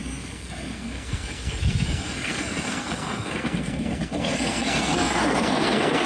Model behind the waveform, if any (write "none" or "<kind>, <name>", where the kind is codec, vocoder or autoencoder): codec, SNAC